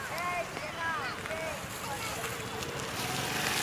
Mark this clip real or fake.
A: real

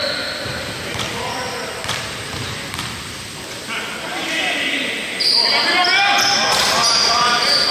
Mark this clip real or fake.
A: real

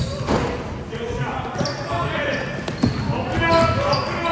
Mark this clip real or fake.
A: real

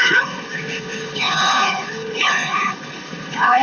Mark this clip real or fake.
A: fake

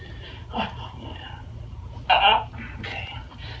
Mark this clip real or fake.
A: real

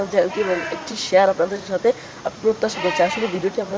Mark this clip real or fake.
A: fake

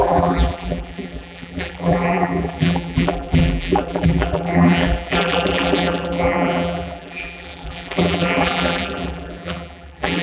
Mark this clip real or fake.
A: fake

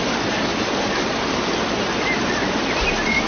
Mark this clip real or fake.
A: real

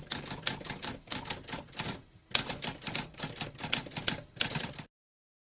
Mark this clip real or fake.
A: real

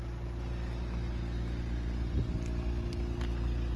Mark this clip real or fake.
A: real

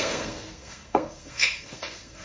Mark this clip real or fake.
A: fake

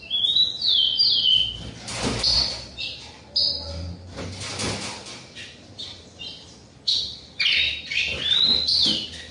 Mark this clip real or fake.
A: fake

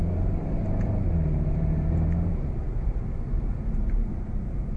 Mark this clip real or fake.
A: fake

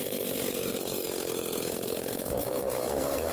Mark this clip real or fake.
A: fake